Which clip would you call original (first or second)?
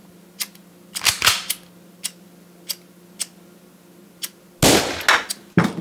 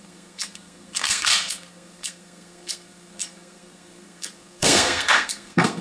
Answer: first